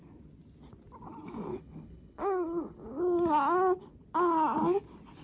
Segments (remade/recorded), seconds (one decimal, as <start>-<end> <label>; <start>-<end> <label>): 0.0-1.5 recorded; 1.5-3.0 remade; 3.0-5.2 recorded